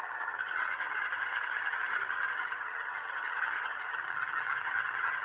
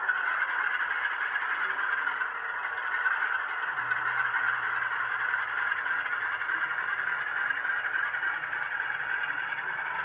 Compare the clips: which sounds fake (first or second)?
first